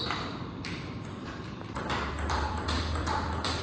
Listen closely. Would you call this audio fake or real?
fake